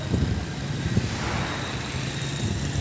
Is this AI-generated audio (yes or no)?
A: no